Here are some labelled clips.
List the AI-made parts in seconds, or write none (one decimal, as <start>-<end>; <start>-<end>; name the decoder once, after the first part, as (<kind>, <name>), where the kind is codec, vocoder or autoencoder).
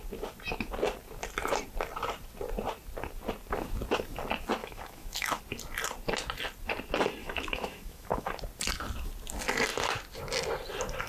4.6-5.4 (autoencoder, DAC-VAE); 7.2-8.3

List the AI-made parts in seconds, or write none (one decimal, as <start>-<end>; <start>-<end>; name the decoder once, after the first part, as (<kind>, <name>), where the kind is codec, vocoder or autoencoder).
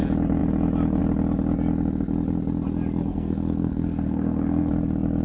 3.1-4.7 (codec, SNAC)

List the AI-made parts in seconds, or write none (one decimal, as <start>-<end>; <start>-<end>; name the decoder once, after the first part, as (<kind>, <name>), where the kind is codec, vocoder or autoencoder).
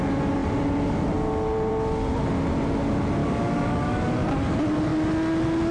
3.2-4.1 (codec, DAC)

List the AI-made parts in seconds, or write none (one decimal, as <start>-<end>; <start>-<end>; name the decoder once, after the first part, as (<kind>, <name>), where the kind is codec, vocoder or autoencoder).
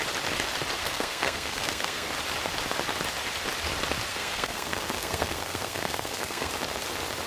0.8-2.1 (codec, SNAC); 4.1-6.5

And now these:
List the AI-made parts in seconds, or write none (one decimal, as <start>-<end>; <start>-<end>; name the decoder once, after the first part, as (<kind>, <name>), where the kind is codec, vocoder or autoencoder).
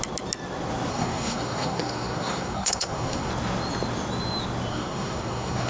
0.9-3.3 (codec, SNAC); 4.7-5.7